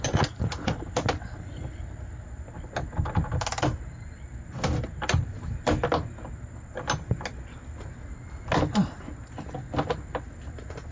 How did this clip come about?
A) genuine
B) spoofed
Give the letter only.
A